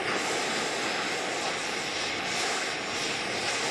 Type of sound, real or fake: real